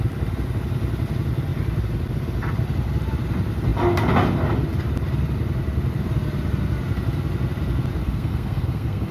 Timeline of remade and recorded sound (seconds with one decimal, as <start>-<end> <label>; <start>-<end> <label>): 0.0-8.0 recorded; 8.0-9.1 remade